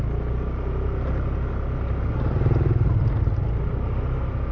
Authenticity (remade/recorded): recorded